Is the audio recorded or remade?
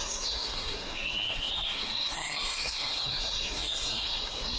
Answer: remade